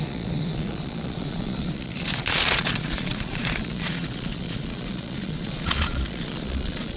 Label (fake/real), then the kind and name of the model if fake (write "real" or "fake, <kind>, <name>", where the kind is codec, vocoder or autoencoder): fake, vocoder, Vocos